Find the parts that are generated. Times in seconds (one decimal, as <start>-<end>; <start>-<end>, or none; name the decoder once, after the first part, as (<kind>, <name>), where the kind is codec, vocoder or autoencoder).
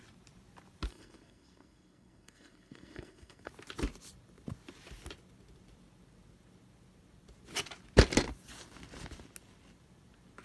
0.9-3.5 (codec, SNAC)